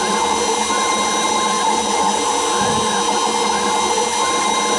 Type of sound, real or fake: real